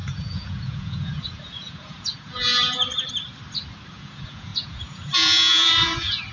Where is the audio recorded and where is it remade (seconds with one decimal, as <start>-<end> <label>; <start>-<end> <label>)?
0.0-2.8 remade; 2.8-3.9 recorded; 3.9-6.3 remade